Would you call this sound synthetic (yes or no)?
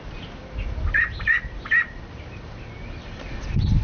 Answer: no